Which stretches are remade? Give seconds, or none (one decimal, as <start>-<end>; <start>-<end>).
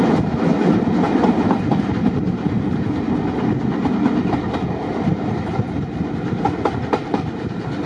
none